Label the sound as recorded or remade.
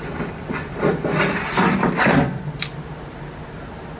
recorded